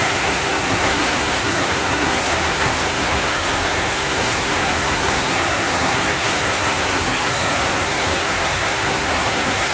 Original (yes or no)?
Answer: no